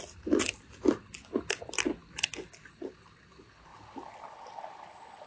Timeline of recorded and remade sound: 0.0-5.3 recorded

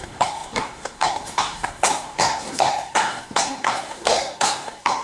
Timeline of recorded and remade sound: 0.0-5.0 remade

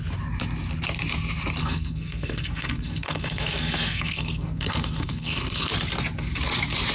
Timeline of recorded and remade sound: 0.0-1.6 recorded; 1.6-5.7 remade; 5.7-6.9 recorded

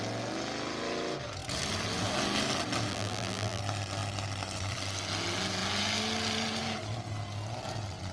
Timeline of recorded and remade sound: 0.0-2.9 recorded; 2.9-3.6 remade; 3.6-8.1 recorded

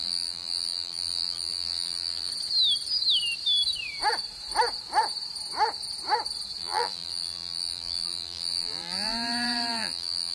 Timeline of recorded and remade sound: 0.0-2.3 remade; 2.3-6.6 recorded; 6.6-10.3 remade

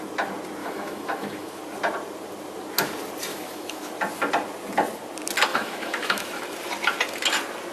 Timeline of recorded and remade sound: 0.0-0.6 recorded; 0.6-1.6 remade; 1.6-3.3 recorded; 3.3-3.9 remade; 3.9-5.5 recorded; 5.5-6.4 remade; 6.4-7.7 recorded